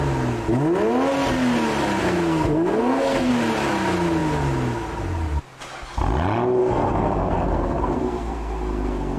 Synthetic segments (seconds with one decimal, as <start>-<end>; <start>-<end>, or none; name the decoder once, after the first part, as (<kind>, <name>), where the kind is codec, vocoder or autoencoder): 2.0-3.3 (codec, SNAC); 6.6-9.2